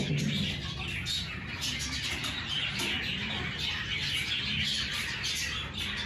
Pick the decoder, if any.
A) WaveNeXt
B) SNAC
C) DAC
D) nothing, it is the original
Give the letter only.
D